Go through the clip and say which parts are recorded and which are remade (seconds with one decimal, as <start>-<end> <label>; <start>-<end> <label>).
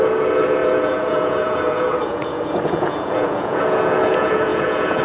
0.0-5.0 remade